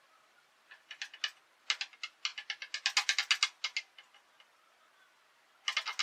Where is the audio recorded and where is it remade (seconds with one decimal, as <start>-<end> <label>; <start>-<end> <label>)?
0.0-6.0 recorded